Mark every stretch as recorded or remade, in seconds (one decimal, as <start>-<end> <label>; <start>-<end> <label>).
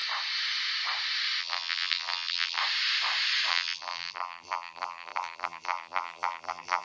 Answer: 0.0-1.4 recorded; 1.4-2.6 remade; 2.6-3.5 recorded; 3.5-6.8 remade